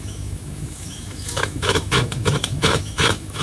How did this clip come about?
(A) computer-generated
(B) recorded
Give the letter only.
A